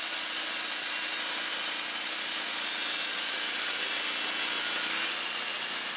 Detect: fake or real real